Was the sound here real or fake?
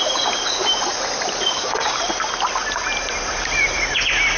real